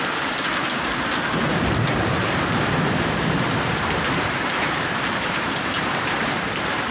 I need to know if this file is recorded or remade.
remade